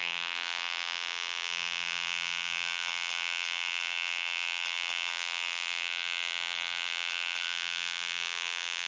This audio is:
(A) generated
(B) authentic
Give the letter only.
A